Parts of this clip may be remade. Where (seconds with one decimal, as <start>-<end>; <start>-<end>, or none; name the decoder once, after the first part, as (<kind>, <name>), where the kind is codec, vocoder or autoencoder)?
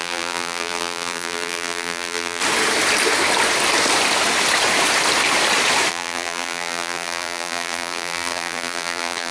0.0-2.4 (vocoder, BigVGAN v2); 5.9-9.3